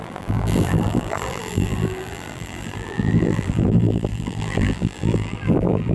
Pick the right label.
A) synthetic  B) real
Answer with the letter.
A